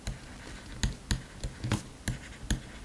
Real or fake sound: real